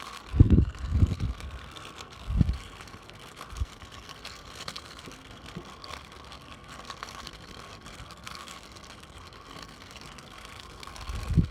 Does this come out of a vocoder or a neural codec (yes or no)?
yes